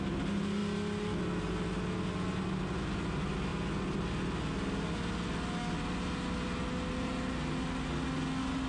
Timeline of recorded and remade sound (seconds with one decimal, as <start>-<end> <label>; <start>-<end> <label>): 0.0-8.7 recorded